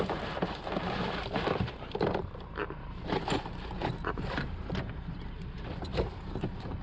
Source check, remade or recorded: remade